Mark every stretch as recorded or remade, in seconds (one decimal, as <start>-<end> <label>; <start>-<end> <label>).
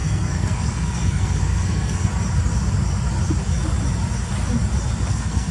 0.0-2.1 remade; 2.1-5.1 recorded; 5.1-5.5 remade